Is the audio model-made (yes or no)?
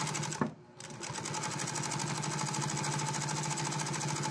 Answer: no